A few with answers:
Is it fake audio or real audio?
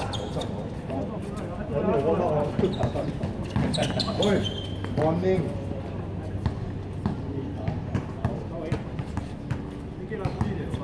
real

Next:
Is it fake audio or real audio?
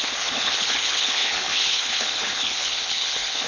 fake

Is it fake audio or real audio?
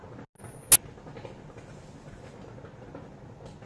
real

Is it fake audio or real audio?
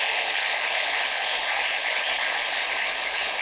fake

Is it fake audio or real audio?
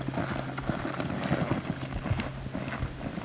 real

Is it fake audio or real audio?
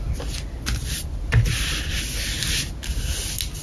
real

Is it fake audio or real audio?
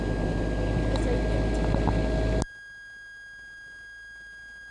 real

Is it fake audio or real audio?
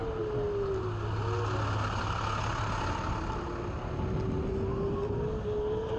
real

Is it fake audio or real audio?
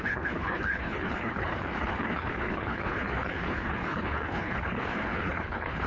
fake